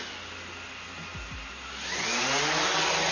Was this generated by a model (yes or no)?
no